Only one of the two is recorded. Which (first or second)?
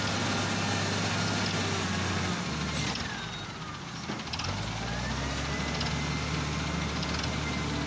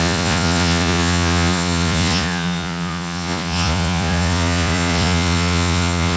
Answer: first